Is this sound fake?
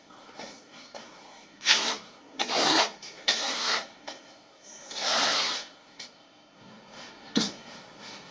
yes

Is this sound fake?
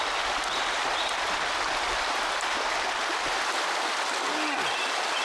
no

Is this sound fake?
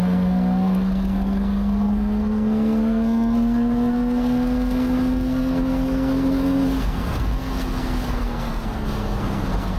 yes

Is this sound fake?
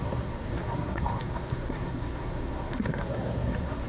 yes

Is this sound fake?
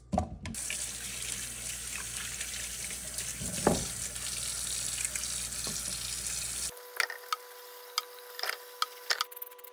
no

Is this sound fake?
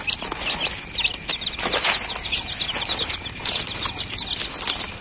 no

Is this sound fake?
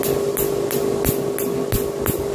no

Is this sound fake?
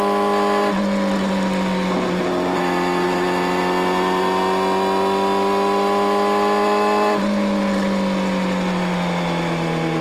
no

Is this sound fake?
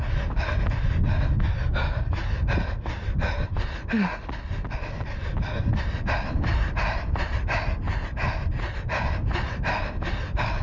no